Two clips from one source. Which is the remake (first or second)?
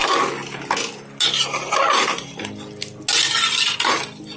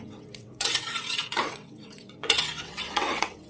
second